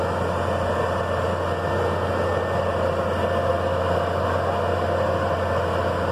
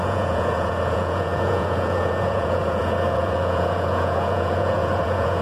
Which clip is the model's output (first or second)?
second